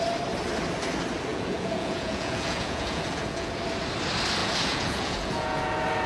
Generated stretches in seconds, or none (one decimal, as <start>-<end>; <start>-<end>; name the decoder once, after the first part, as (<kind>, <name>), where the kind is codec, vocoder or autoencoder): 1.3-3.5 (vocoder, Vocos); 4.4-5.6